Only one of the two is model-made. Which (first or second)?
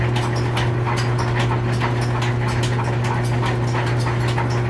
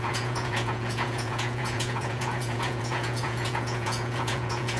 second